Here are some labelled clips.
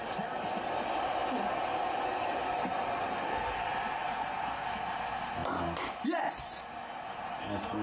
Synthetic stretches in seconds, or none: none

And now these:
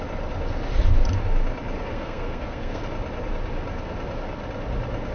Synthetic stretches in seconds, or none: 1.9-2.8 (codec, SNAC)